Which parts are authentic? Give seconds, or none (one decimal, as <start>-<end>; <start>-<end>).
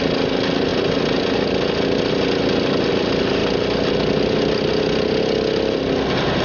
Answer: 0.0-6.4